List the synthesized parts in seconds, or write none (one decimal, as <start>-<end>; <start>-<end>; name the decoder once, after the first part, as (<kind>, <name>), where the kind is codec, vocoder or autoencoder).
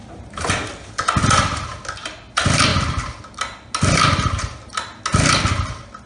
0.0-0.5 (vocoder, BigVGAN v2)